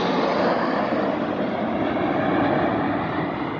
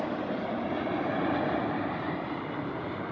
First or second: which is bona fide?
first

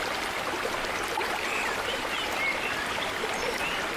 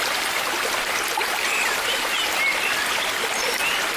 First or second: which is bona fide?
second